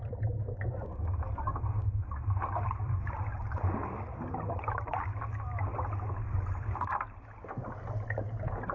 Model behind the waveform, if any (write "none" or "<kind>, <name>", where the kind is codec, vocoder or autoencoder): none